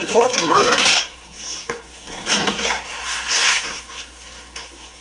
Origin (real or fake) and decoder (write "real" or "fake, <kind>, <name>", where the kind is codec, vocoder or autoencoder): fake, codec, SNAC